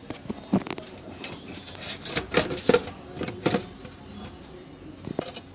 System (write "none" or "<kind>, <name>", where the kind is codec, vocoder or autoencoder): none